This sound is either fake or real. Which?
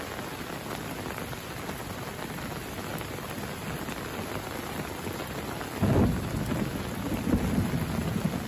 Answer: real